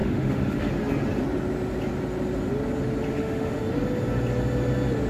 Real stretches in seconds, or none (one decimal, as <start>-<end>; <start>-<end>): 0.7-3.1; 3.6-5.1